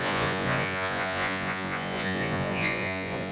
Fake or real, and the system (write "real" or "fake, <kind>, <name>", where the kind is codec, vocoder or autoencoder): fake, vocoder, Vocos